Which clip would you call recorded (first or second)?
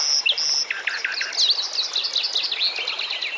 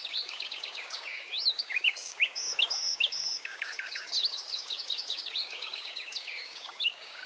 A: first